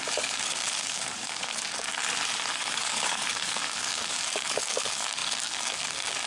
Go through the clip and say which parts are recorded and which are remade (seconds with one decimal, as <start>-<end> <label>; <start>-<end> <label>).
0.0-2.0 remade; 2.0-2.5 recorded; 2.5-6.3 remade